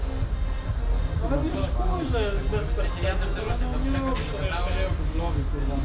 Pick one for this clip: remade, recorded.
recorded